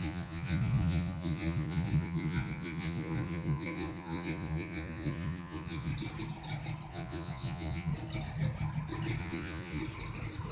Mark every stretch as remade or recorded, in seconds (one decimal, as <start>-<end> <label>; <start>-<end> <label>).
0.0-5.9 remade; 5.9-6.9 recorded; 6.9-7.9 remade; 7.9-9.2 recorded; 9.2-9.8 remade; 9.8-10.5 recorded